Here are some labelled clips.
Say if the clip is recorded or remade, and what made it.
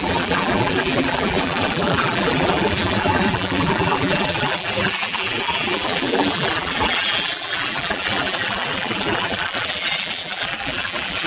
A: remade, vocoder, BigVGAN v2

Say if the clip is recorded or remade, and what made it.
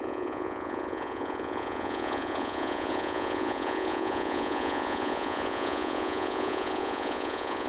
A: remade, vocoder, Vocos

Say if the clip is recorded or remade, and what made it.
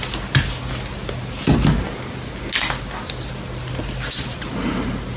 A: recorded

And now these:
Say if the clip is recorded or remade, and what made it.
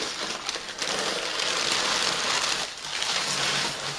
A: recorded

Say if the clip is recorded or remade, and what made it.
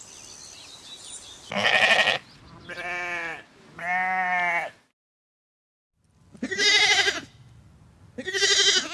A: recorded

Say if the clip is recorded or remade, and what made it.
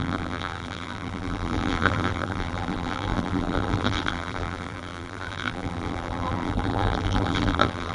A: remade, vocoder, BigVGAN v2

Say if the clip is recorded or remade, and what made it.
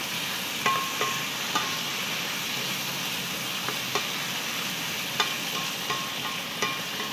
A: recorded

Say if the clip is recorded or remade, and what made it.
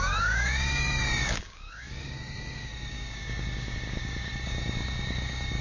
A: remade, codec, DAC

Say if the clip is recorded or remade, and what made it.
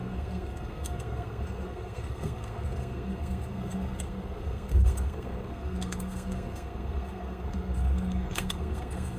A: remade, codec, SNAC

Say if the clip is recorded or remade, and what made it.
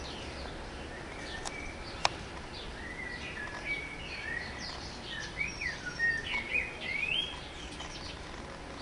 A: recorded